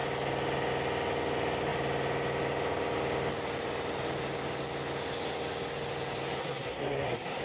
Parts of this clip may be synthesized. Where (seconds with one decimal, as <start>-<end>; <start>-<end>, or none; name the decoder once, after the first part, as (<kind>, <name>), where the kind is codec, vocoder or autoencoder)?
6.4-7.4 (codec, SNAC)